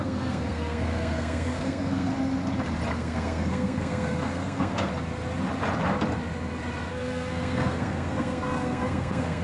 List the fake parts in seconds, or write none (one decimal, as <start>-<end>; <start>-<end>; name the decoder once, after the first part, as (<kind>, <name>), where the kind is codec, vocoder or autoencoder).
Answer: 0.0-2.1 (codec, SNAC); 2.9-4.9; 6.9-9.4